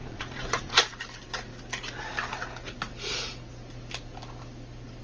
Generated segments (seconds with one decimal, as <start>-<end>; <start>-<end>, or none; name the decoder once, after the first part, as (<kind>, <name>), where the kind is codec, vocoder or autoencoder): 0.0-0.7 (vocoder, Vocos)